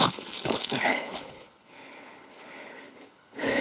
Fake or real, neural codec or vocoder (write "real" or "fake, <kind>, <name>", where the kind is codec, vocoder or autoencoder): fake, codec, HILCodec